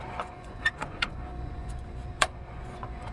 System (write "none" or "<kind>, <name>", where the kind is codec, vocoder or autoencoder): vocoder, Vocos